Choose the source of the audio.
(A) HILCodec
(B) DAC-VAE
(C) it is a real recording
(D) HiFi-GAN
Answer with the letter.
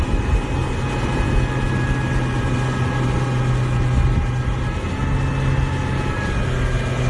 C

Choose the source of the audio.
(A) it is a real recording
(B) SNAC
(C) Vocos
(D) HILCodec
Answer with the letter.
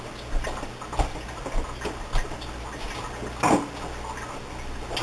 A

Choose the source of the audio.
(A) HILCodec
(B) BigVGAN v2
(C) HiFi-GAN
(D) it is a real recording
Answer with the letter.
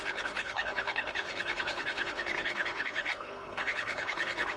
A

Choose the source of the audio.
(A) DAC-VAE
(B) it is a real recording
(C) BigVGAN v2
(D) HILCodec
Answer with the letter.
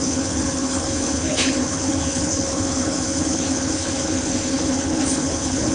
D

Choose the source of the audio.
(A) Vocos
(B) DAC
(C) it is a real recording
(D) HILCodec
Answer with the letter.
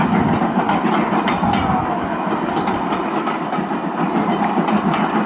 C